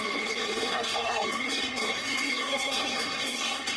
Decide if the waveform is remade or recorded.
remade